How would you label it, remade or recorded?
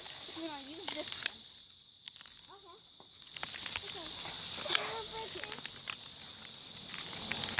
recorded